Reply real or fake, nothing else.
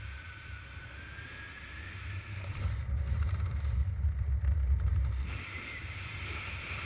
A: real